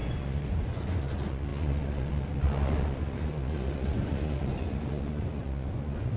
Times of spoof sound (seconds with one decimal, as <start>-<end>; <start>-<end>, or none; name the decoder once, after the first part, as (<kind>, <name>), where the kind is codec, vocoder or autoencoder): 0.0-6.2 (vocoder, Vocos)